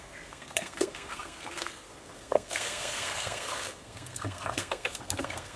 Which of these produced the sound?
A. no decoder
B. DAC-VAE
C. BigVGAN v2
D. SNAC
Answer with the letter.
D